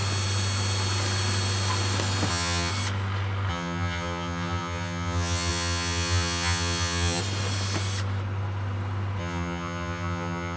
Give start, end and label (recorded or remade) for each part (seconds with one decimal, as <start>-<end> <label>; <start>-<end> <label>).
0.0-2.3 recorded; 2.3-2.7 remade; 2.7-3.5 recorded; 3.5-7.2 remade; 7.2-9.2 recorded; 9.2-10.6 remade